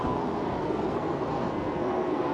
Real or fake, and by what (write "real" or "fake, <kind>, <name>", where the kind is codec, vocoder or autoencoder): fake, codec, SNAC